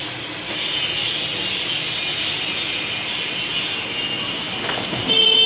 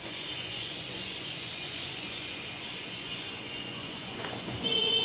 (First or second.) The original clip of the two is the first